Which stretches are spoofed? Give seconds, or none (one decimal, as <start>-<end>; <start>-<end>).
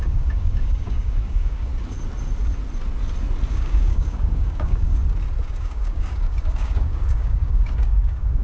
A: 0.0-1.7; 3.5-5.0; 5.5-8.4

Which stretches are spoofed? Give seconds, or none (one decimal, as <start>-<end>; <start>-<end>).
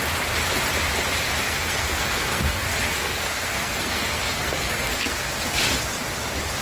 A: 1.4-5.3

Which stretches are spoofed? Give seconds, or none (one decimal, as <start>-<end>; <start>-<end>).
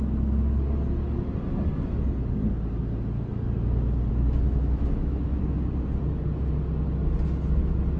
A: 4.1-5.4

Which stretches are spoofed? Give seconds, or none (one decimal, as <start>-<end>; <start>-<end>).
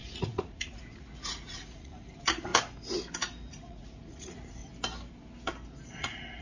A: 0.0-2.5; 3.5-4.6; 6.0-6.4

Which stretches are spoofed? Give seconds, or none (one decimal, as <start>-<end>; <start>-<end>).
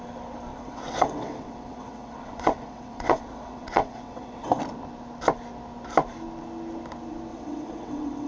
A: 0.5-4.5; 7.3-8.3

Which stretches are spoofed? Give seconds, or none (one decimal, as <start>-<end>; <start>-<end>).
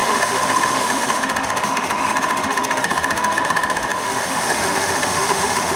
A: 0.0-5.8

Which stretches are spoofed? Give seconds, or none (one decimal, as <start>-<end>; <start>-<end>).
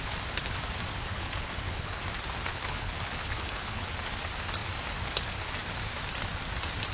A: 1.1-2.0; 2.5-3.9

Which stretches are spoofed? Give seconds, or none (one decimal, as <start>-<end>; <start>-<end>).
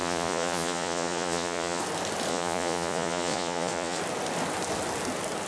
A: 0.0-1.8; 2.3-4.0